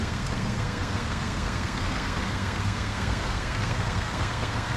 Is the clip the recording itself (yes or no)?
no